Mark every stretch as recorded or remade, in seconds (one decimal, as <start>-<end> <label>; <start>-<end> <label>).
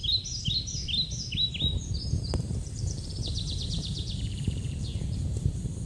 0.0-1.8 recorded; 1.8-5.9 remade